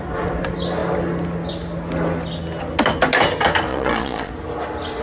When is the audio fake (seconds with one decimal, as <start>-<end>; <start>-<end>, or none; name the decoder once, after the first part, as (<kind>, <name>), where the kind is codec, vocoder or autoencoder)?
3.7-4.3 (vocoder, Vocos)